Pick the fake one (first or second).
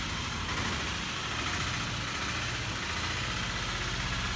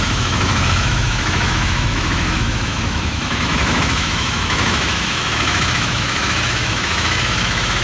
second